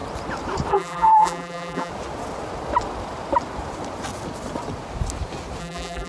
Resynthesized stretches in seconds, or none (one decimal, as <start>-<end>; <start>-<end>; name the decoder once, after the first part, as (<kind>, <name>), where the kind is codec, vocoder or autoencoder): 0.7-1.9 (vocoder, BigVGAN v2); 5.6-6.1